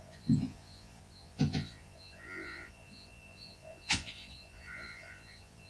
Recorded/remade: remade